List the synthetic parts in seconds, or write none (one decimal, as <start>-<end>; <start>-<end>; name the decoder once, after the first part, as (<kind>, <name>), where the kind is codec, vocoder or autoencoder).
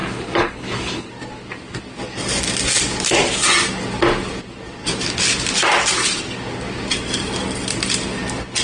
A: 0.0-1.1 (codec, HILCodec)